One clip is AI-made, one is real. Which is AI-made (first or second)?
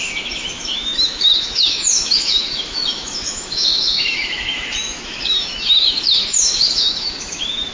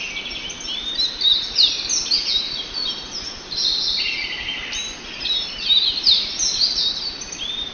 first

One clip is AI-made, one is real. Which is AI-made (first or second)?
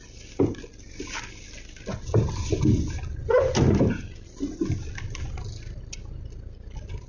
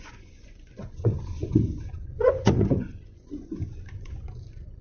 second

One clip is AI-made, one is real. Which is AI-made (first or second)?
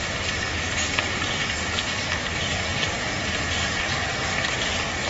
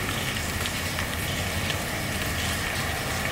first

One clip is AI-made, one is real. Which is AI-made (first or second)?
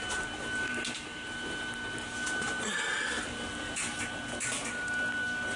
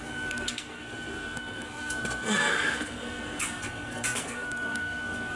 second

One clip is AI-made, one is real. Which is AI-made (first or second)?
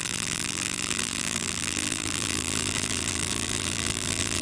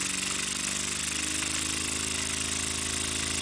first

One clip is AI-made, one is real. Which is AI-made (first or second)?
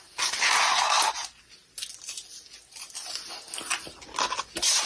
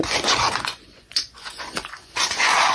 second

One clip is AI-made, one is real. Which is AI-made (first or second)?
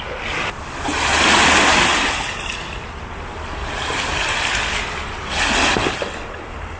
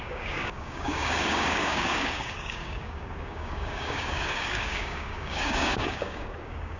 second